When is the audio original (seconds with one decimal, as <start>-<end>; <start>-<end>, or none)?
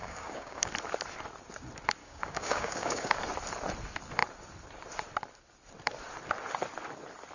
0.7-2.0; 3.2-7.3